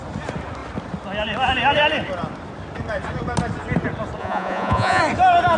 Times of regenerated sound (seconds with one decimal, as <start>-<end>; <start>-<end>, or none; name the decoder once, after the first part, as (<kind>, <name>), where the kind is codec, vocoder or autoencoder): 4.2-5.0 (vocoder, Vocos)